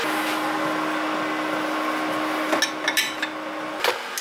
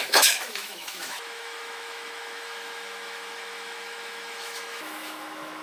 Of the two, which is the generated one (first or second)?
second